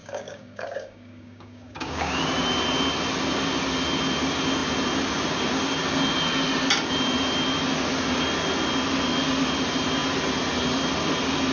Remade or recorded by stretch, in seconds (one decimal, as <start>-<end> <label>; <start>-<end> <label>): 0.0-2.2 remade; 2.2-11.5 recorded